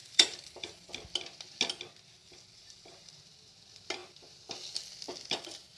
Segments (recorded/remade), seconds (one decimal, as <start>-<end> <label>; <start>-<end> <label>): 0.0-0.9 remade; 0.9-2.2 recorded; 2.2-3.1 remade; 3.1-5.8 recorded